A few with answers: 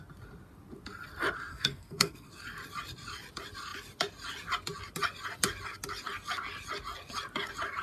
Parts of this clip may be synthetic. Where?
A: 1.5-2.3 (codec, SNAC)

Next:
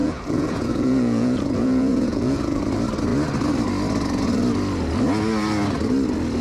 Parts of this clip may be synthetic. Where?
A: 0.0-2.6 (vocoder, Vocos)

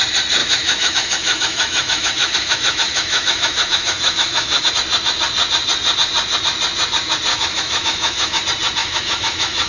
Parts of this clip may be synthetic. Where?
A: 0.4-4.7 (autoencoder, DAC-VAE); 7.3-8.4; 8.8-9.7

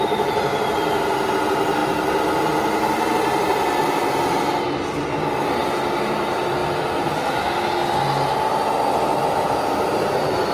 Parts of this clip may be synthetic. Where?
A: none

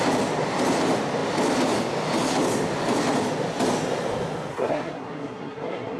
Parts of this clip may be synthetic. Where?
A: 4.5-6.0 (codec, SNAC)

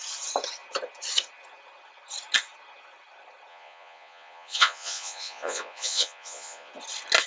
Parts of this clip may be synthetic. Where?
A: 3.5-6.7 (vocoder, Vocos)

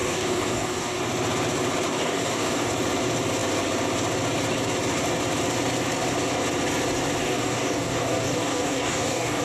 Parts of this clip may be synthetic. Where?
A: 0.0-1.0 (codec, DAC); 1.9-2.7; 7.2-9.4

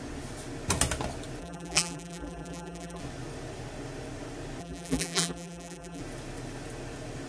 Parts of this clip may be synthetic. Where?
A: 1.4-3.0 (vocoder, BigVGAN v2); 4.6-6.0